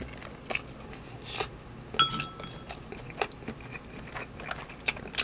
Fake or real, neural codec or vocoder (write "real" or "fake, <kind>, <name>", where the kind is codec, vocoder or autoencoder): real